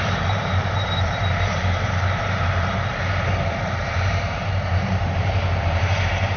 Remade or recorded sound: remade